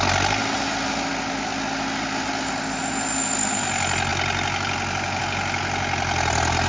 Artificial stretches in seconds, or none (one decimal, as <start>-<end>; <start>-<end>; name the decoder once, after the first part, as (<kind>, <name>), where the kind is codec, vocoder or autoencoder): none